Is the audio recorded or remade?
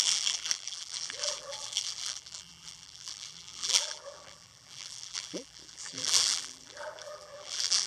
remade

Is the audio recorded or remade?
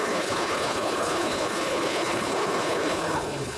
remade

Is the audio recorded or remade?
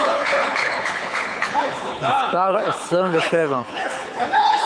remade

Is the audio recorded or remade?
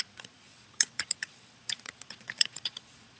remade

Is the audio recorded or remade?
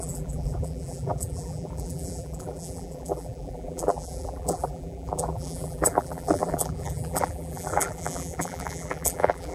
remade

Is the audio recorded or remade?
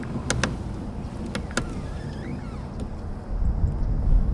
recorded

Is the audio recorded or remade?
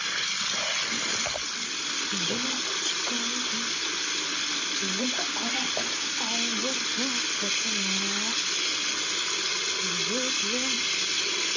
recorded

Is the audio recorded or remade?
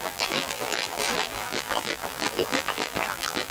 remade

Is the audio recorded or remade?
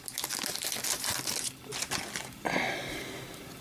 recorded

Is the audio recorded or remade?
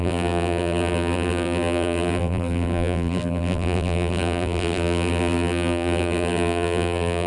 remade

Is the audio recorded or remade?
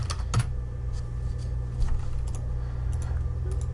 recorded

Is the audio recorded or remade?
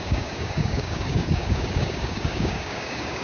remade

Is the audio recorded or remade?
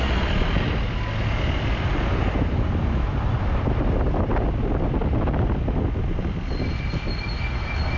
recorded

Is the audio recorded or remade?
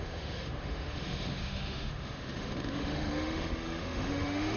remade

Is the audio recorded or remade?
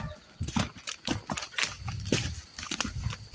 recorded